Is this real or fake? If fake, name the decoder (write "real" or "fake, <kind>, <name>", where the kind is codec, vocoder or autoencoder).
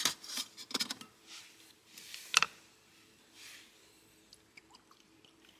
fake, vocoder, BigVGAN v2